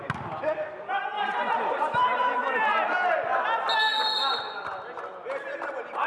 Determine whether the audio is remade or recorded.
recorded